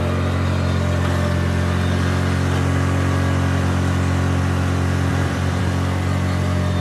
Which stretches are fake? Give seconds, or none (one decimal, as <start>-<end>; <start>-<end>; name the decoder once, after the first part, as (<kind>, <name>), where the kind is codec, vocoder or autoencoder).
5.1-5.6 (vocoder, BigVGAN v2)